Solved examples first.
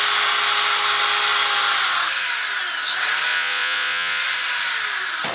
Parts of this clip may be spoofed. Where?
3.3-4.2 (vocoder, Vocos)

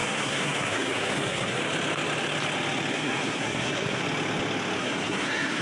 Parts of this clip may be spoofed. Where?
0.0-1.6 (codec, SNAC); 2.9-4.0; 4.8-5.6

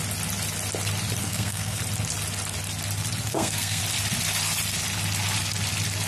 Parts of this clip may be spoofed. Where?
1.2-1.8 (codec, SNAC); 3.3-3.8

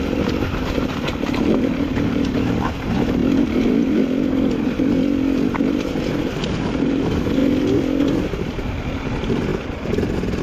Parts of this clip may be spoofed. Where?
0.0-3.2 (vocoder, BigVGAN v2); 5.9-7.4; 8.0-9.5

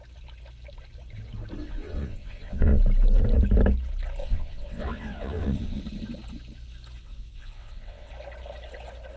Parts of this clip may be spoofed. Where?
1.6-2.8 (vocoder, WaveNeXt); 4.2-5.8; 7.0-8.1

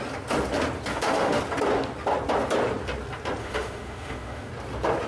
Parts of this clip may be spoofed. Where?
0.9-1.4 (autoencoder, DAC-VAE); 3.4-4.5

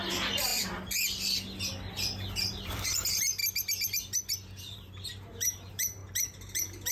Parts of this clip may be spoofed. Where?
0.0-0.5 (vocoder, BigVGAN v2); 1.9-3.4; 4.6-6.0

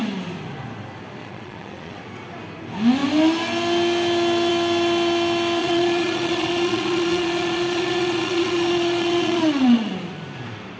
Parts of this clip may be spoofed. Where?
1.2-2.0 (vocoder, Vocos); 5.6-9.9